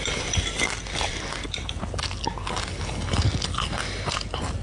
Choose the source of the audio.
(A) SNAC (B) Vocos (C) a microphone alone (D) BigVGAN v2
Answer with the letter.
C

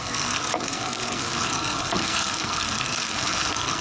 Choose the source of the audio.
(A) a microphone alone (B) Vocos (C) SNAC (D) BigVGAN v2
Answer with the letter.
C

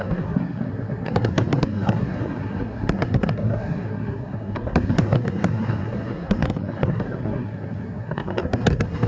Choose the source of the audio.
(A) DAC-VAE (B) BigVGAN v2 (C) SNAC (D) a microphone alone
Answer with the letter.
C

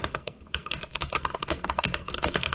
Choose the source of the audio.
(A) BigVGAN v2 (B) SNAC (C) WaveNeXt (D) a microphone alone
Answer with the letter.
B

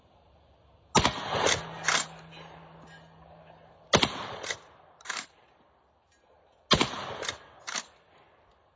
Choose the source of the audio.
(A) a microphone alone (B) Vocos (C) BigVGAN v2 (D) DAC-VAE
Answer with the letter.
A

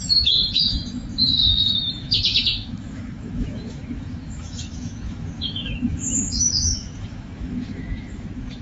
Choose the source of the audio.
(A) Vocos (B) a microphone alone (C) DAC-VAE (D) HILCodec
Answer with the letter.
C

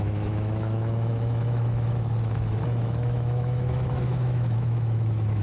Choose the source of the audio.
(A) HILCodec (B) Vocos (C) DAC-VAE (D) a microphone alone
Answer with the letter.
C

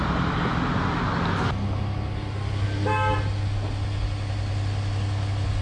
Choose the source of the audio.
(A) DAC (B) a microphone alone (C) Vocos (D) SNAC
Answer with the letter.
B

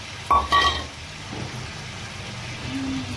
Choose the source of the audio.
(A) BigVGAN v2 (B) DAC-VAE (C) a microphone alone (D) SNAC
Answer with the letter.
C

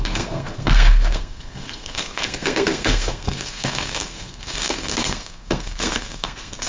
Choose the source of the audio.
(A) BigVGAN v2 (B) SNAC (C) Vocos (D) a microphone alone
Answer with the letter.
B